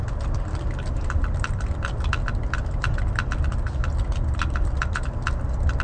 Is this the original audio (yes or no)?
yes